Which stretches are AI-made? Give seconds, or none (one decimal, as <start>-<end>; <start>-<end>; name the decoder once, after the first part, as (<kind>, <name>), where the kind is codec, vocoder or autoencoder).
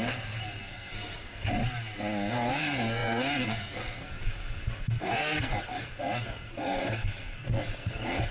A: 0.0-1.6 (codec, SNAC); 2.3-8.3